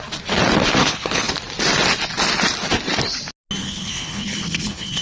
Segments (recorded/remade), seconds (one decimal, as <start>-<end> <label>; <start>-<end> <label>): 0.0-0.8 recorded; 0.8-1.3 remade; 1.3-3.6 recorded; 3.6-5.0 remade